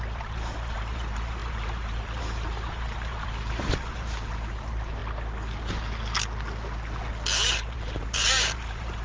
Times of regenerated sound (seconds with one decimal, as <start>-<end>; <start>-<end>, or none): 0.0-5.0; 7.5-9.0